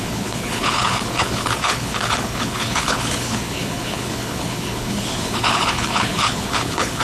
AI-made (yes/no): yes